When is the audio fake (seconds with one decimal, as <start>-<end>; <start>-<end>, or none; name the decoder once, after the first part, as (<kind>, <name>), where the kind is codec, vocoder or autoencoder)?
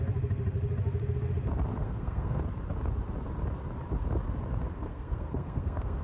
1.7-2.4 (codec, SNAC); 4.8-6.0